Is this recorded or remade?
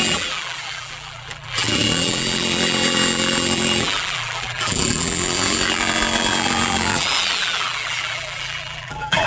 remade